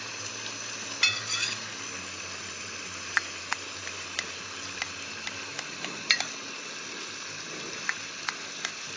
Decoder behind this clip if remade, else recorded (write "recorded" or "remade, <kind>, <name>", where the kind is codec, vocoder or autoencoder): recorded